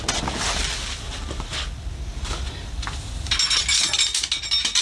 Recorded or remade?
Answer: recorded